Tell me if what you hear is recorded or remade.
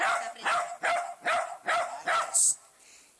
recorded